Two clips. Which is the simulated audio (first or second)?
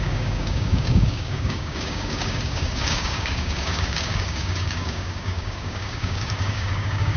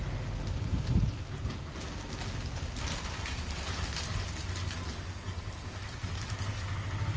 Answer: first